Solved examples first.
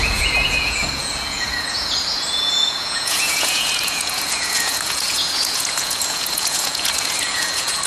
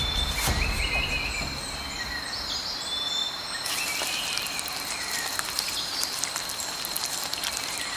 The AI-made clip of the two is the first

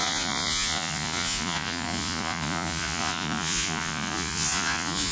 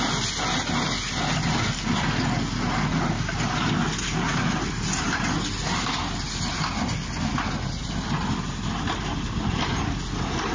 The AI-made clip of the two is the first